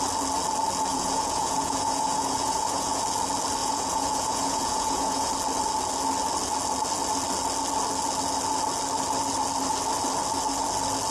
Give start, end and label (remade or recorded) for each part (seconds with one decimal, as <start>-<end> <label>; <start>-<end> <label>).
0.0-0.9 recorded; 0.9-3.0 remade; 3.0-3.6 recorded; 3.6-5.3 remade; 5.3-11.1 recorded